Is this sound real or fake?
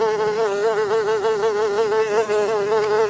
real